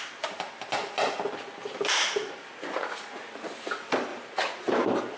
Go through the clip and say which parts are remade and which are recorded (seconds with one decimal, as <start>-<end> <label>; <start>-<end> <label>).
0.0-2.5 recorded; 2.5-3.3 remade; 3.3-4.1 recorded; 4.1-4.7 remade; 4.7-5.2 recorded